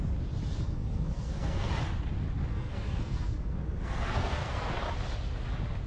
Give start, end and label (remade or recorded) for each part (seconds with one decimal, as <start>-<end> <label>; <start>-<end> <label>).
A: 0.0-0.5 recorded; 0.5-1.7 remade; 1.7-2.5 recorded; 2.5-4.8 remade; 4.8-5.9 recorded